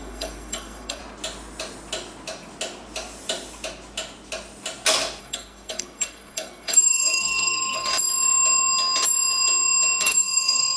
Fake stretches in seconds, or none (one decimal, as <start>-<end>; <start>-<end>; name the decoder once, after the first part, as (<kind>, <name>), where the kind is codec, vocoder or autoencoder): 0.0-1.0 (codec, SNAC); 5.2-7.9; 10.0-10.8